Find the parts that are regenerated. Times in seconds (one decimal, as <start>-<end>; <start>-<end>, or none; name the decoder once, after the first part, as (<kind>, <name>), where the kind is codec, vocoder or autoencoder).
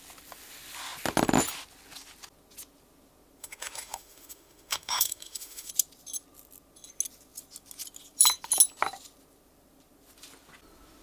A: 3.4-5.7 (autoencoder, DAC-VAE)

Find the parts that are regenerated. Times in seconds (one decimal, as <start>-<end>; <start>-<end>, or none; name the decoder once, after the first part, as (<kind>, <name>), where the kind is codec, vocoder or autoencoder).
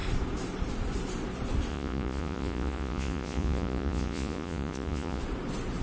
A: 1.7-5.2 (vocoder, Vocos)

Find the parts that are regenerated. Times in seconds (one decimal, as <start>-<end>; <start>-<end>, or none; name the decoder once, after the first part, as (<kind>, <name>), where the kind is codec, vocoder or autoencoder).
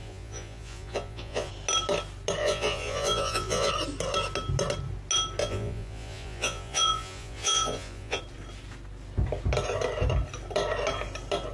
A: 0.0-1.5 (vocoder, Vocos); 2.4-3.7; 5.4-8.2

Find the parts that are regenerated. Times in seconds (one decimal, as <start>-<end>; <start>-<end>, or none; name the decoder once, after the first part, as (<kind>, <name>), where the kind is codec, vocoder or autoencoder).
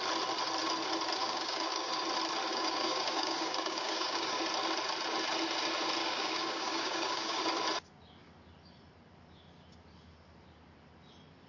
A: 1.2-1.9 (codec, DAC); 2.5-4.4; 6.0-7.4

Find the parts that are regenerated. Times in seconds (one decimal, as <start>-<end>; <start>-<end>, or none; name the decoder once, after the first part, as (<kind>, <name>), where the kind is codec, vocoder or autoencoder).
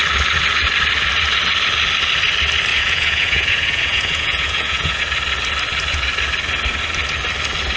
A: 2.7-5.0 (vocoder, Vocos)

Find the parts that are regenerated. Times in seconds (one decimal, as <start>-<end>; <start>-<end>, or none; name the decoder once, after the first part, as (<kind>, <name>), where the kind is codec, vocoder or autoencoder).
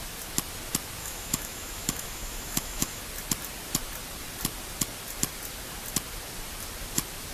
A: 1.0-3.0 (autoencoder, DAC-VAE)